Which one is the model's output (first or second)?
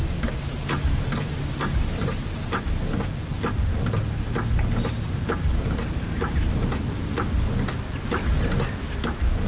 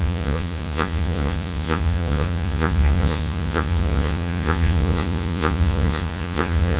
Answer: second